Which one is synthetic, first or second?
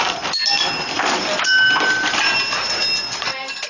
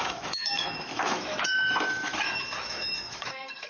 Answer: second